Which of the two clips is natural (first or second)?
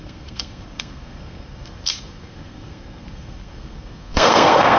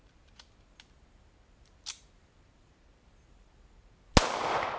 second